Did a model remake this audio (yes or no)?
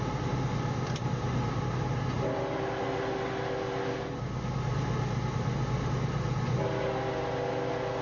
no